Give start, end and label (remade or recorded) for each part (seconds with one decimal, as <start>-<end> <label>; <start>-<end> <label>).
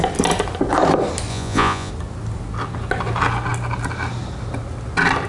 0.0-1.3 recorded; 1.3-1.9 remade; 1.9-5.3 recorded